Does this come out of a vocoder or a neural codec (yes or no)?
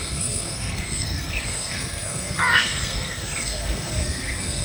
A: yes